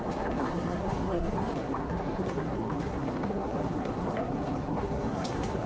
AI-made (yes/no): yes